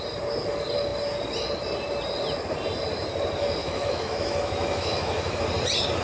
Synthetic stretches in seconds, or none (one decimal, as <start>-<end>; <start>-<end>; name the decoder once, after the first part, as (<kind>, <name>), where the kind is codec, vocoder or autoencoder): 3.6-5.4 (autoencoder, DAC-VAE)